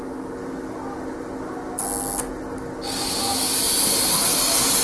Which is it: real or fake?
real